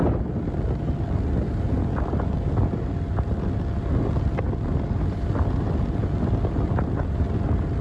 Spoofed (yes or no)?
no